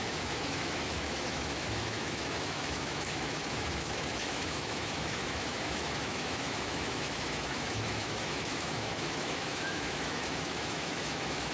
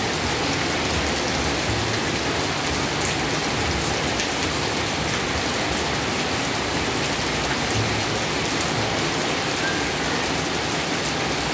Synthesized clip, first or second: first